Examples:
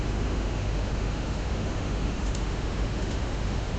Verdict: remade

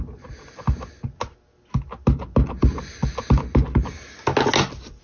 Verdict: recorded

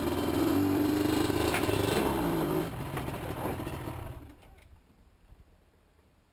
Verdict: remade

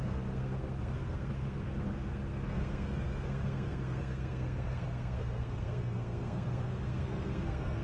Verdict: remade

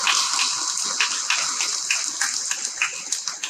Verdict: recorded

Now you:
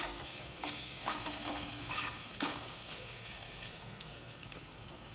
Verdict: remade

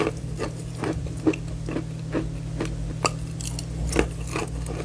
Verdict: recorded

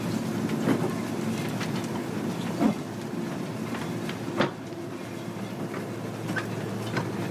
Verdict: recorded